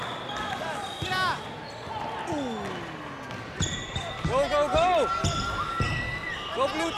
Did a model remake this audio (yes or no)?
no